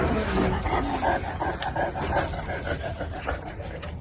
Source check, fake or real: real